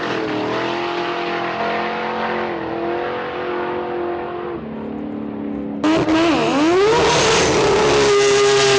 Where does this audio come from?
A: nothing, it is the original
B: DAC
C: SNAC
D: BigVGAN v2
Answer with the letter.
A